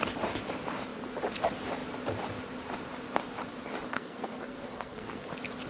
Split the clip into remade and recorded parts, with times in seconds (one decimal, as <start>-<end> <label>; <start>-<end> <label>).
0.0-3.9 recorded; 3.9-5.3 remade; 5.3-5.7 recorded